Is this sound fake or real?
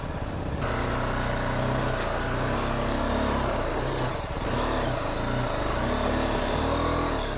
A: real